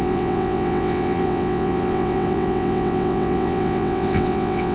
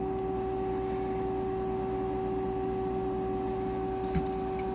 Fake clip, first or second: first